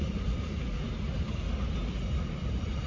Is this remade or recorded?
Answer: recorded